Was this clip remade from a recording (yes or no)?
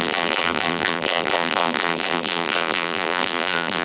yes